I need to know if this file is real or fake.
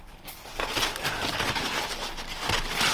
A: real